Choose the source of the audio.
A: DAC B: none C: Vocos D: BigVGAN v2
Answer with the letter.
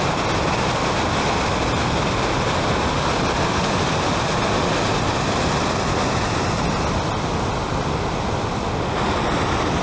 B